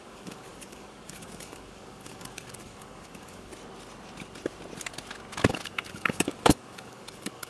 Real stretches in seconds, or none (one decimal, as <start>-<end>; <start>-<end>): 3.5-5.5